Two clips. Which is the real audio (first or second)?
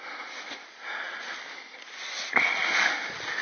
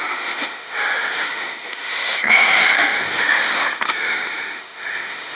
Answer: first